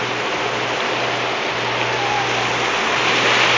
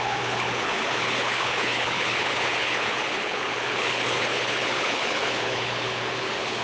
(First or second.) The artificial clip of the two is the second